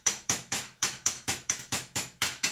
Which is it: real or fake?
fake